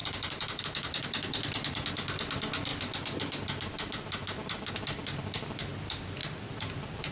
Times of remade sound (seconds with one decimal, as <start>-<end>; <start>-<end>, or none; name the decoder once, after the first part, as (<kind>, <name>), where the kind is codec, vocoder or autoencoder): 0.0-0.6 (vocoder, BigVGAN v2); 6.2-7.1